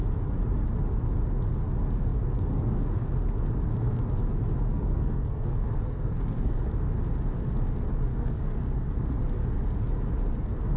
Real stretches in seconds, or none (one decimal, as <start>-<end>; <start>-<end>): 0.0-4.7; 6.7-8.1; 9.2-10.8